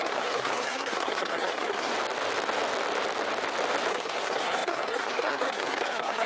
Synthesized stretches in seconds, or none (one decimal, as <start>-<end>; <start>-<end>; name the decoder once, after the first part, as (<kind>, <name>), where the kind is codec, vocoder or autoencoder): 0.0-1.9 (codec, SNAC); 3.9-6.3